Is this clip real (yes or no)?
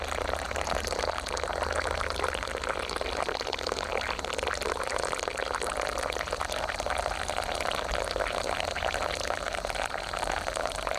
yes